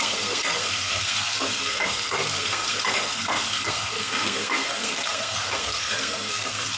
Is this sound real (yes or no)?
no